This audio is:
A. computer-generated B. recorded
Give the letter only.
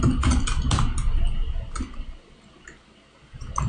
B